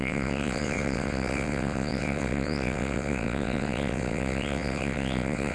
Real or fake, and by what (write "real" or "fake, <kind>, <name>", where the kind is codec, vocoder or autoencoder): fake, vocoder, WaveNeXt